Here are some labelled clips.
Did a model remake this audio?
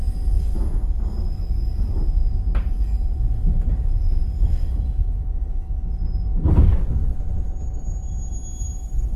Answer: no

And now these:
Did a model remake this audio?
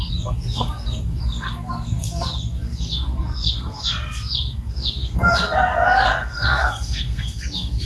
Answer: yes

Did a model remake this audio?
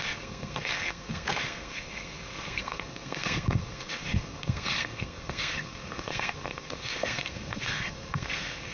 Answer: yes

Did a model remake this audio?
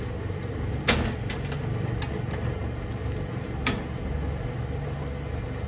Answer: no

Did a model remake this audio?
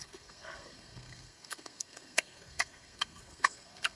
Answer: yes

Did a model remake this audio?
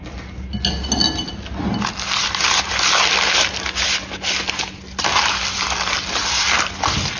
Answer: no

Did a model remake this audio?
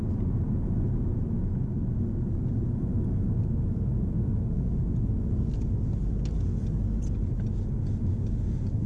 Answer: no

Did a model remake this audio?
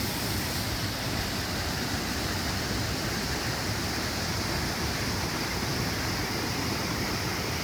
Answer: no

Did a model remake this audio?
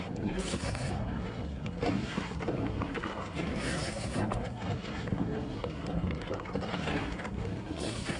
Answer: yes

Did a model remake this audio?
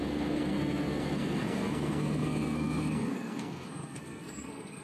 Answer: yes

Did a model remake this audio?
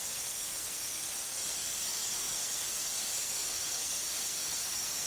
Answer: yes